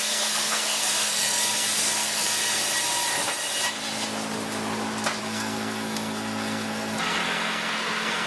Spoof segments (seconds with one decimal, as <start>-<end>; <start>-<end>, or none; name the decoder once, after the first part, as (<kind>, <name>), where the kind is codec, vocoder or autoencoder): 0.0-2.6 (codec, SNAC); 5.2-8.3